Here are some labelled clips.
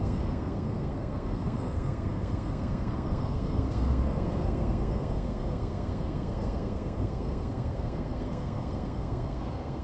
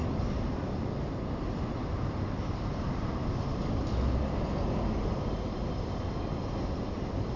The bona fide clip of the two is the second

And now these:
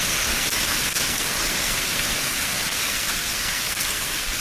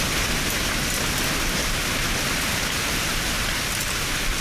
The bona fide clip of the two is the second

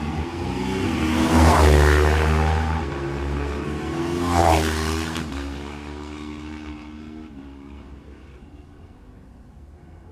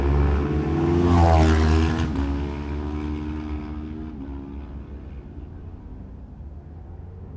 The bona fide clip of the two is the second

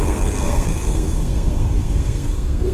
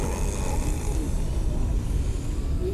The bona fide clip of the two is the second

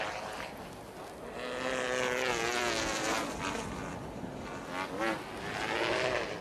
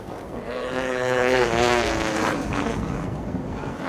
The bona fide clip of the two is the first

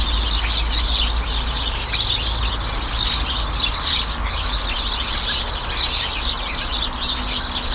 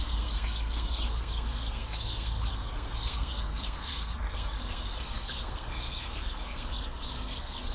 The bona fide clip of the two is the first